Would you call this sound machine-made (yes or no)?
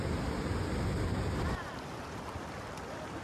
no